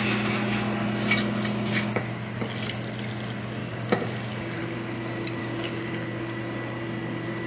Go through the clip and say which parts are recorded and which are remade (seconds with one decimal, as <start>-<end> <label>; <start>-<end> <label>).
0.0-1.5 recorded; 1.5-2.0 remade; 2.0-3.6 recorded; 3.6-4.6 remade; 4.6-5.4 recorded; 5.4-5.9 remade; 5.9-7.5 recorded